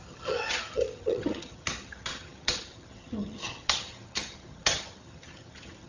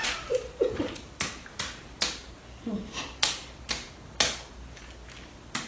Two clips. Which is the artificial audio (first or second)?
first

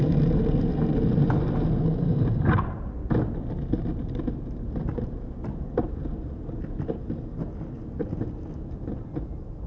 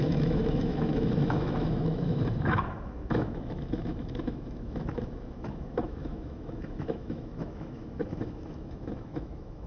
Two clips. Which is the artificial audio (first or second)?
second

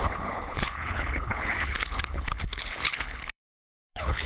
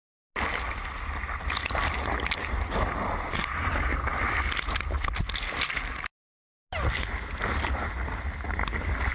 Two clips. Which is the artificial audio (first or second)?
first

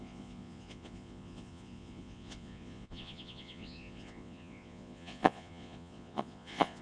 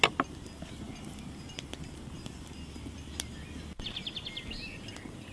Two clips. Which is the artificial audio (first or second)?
first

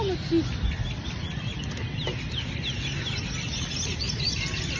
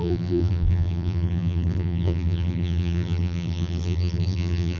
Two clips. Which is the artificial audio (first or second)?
second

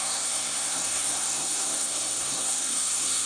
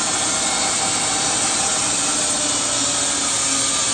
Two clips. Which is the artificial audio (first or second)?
first